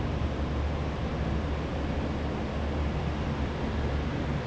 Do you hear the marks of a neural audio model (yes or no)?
no